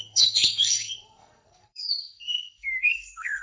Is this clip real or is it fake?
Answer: fake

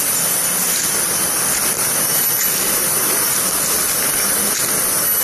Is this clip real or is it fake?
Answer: real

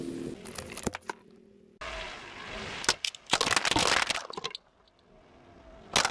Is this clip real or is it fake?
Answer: real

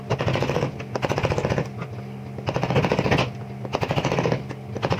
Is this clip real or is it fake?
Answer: real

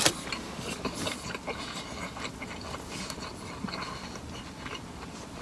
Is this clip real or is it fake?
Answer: real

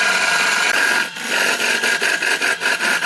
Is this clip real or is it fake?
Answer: real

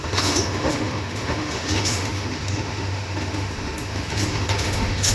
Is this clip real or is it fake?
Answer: fake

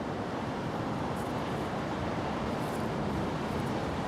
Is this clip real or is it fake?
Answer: fake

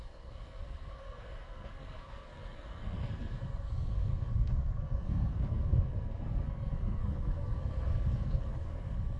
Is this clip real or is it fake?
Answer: fake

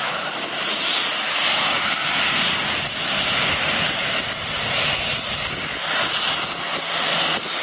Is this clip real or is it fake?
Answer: fake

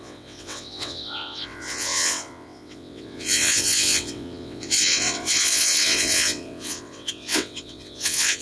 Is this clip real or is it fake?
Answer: fake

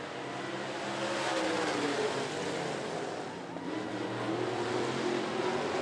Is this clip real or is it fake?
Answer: real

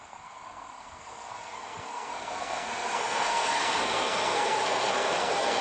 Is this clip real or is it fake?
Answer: fake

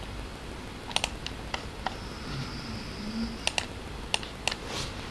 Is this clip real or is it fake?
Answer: real